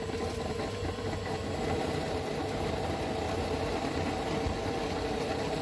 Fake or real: real